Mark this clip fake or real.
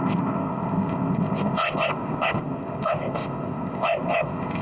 fake